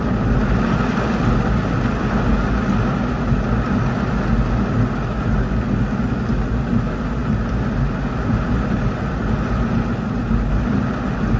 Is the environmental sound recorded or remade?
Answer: recorded